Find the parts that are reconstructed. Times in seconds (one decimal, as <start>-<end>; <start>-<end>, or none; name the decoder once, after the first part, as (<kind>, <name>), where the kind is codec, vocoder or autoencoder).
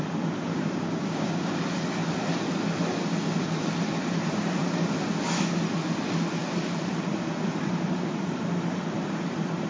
0.5-1.6 (codec, DAC)